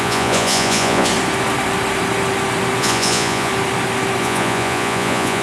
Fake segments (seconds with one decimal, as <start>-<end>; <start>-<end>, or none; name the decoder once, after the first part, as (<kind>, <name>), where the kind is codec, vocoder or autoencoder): 0.0-1.1 (vocoder, Vocos); 2.8-3.5; 4.2-5.4